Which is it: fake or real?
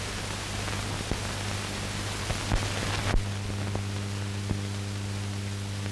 real